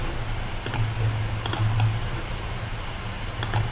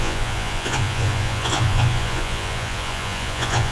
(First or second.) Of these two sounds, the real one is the first